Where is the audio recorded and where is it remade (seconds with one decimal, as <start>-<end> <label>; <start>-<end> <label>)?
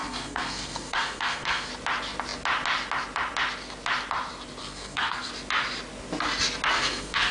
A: 0.0-1.7 remade; 1.7-4.6 recorded; 4.6-5.3 remade; 5.3-6.7 recorded; 6.7-7.3 remade